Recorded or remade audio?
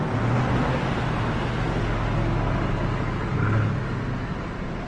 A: recorded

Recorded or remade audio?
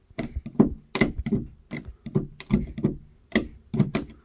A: recorded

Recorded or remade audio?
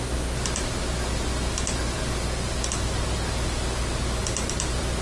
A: recorded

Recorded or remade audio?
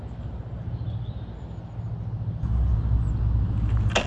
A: recorded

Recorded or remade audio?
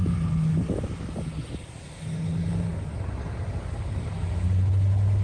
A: recorded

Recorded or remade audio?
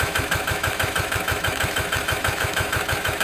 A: remade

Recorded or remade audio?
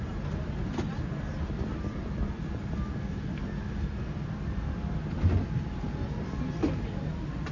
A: recorded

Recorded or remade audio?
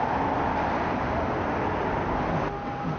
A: recorded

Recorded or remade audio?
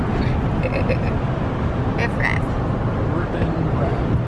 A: recorded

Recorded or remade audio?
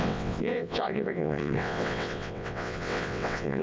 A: remade